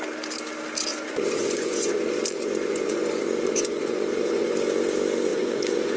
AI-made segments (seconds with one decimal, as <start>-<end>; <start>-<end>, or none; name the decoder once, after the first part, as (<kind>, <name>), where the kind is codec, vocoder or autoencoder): 0.9-4.5 (vocoder, Vocos); 5.3-6.0